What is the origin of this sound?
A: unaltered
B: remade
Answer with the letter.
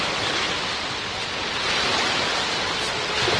A